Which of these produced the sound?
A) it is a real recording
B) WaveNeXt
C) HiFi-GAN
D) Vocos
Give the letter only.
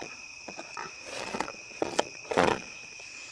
D